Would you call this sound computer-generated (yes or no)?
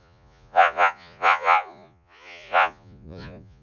yes